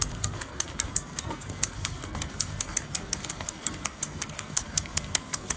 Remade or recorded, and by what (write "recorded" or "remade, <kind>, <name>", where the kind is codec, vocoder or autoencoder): remade, codec, SNAC